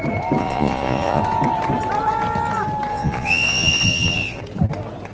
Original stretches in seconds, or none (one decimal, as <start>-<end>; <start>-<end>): 0.0-0.4; 1.2-2.9; 4.4-5.1